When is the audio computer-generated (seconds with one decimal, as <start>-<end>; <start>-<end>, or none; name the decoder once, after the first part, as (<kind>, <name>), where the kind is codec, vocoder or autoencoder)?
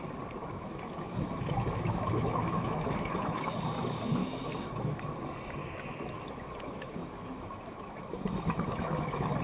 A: 0.4-3.5 (autoencoder, DAC-VAE); 4.2-5.1; 5.6-9.4